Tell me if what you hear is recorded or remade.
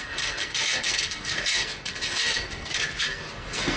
remade